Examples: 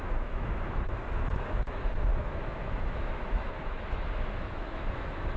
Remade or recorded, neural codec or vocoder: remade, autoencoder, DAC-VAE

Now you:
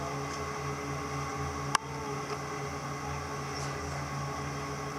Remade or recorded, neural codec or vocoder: recorded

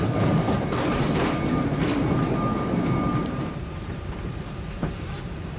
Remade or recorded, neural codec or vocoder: remade, vocoder, BigVGAN v2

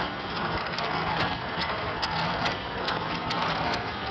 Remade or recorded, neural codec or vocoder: remade, codec, SNAC